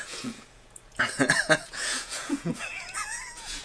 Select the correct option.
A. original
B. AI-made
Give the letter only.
B